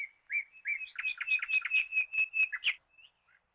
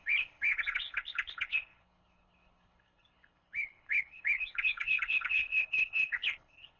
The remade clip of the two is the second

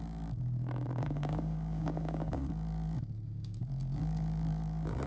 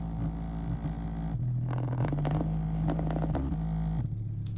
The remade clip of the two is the first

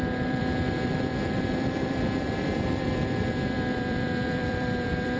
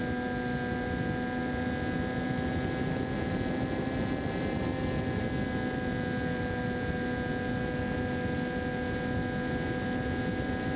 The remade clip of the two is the first